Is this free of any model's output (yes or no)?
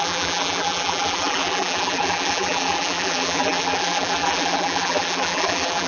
no